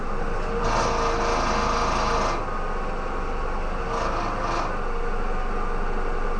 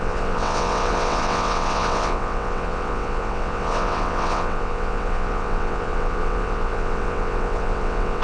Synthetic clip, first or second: second